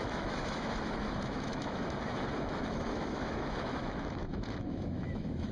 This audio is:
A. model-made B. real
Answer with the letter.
A